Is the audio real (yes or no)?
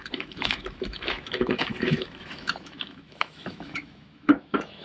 no